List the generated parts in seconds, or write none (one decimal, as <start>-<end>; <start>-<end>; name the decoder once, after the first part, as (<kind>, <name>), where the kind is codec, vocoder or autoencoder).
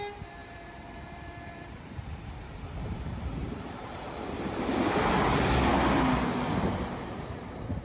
0.4-4.7 (vocoder, BigVGAN v2)